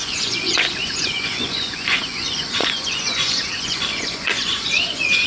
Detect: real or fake fake